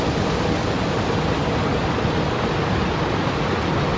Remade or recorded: recorded